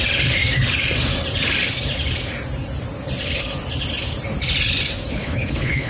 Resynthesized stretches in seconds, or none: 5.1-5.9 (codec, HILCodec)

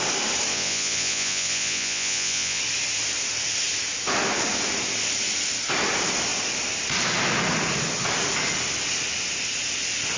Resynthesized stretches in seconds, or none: 0.5-2.6 (vocoder, Vocos)

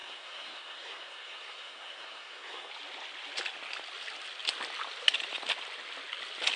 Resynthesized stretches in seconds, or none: 0.0-2.7 (codec, SNAC)

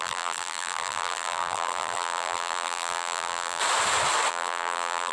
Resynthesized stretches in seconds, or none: 0.0-3.6 (vocoder, BigVGAN v2); 4.3-5.1

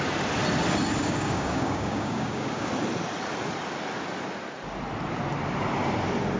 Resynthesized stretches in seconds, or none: 1.0-2.7 (codec, DAC)